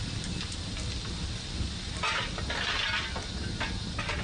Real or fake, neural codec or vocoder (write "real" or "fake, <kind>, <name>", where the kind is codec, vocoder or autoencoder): real